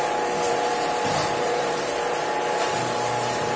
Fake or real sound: fake